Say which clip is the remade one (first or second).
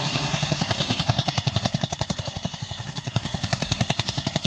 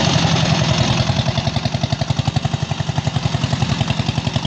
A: first